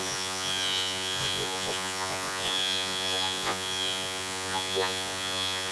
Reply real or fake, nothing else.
fake